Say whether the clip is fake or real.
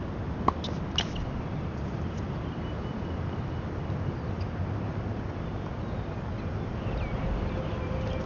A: real